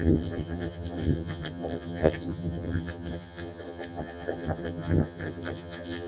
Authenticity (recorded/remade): remade